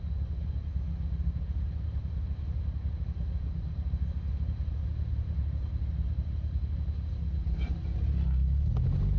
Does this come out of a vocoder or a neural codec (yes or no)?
no